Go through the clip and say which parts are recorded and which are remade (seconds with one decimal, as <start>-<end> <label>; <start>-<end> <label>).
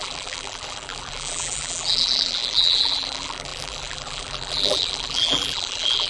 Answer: 0.0-6.1 remade